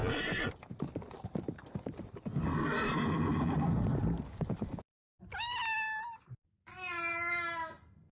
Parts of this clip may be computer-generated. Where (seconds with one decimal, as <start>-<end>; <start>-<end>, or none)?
none